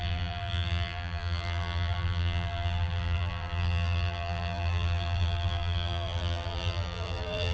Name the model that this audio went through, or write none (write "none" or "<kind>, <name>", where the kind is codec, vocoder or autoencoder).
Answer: vocoder, BigVGAN v2